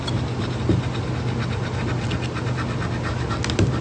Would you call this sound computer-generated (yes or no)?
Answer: no